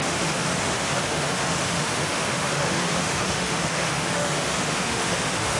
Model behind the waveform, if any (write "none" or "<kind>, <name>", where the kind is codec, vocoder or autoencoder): autoencoder, DAC-VAE